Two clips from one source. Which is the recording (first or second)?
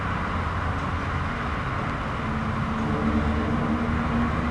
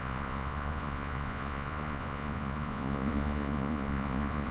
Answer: first